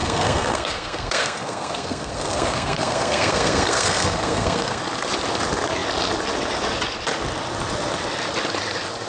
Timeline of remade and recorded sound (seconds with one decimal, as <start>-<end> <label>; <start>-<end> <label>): 0.0-4.8 remade; 4.8-9.1 recorded